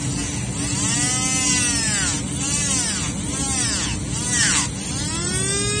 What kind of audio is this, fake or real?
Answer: real